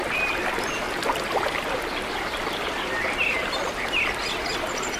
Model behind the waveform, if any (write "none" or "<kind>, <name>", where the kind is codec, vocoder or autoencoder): none